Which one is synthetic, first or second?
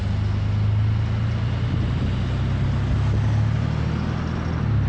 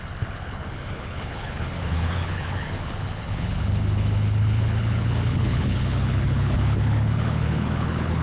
second